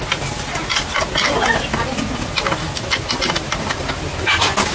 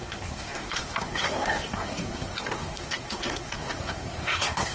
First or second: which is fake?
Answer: second